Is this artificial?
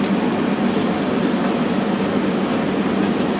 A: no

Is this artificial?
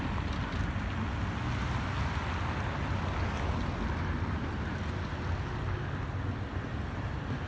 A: no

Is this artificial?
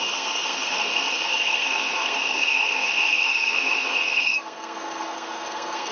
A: yes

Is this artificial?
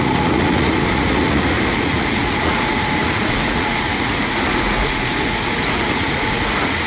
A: yes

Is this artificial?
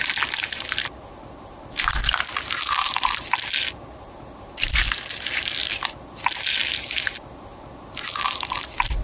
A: no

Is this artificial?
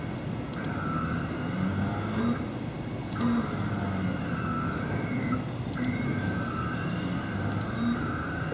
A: no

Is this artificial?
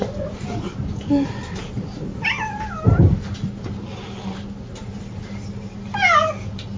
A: no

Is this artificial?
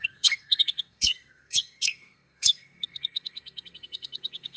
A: yes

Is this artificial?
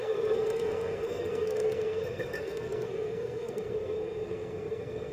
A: yes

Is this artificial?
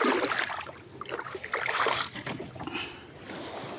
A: no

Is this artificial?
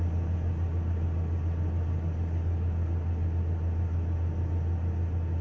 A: no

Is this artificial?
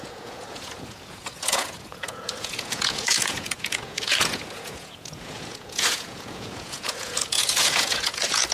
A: yes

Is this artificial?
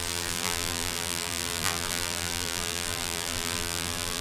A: yes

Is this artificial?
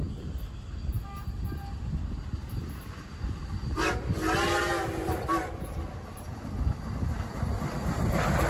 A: no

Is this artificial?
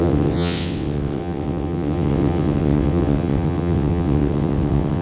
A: yes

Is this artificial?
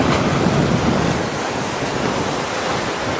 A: no